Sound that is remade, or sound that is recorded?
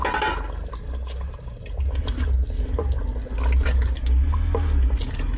recorded